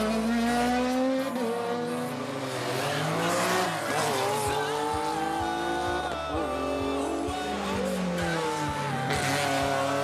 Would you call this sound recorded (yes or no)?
yes